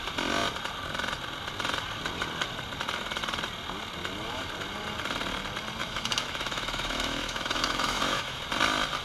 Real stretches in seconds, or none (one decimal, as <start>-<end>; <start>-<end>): 0.0-5.8; 8.4-9.0